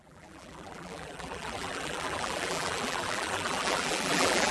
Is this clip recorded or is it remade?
remade